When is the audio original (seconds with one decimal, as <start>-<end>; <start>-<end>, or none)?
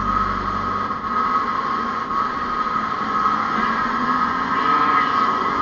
0.0-1.5; 2.1-2.9